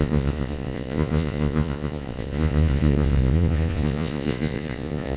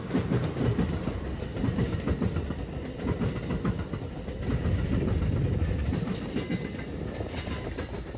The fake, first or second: first